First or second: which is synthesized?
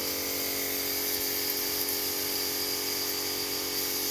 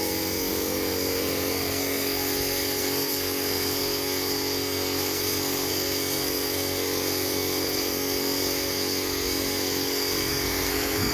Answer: second